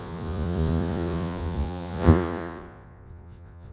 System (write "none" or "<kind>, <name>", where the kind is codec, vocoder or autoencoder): vocoder, Vocos